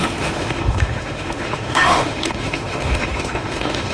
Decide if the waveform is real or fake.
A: fake